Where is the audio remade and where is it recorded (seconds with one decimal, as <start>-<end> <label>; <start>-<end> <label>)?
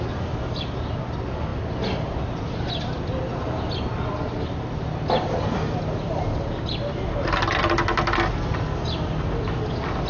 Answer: 0.0-10.1 recorded